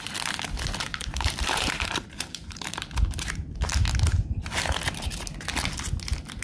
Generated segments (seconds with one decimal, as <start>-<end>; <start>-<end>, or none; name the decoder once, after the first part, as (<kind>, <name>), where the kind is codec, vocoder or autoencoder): 0.9-3.7 (vocoder, BigVGAN v2)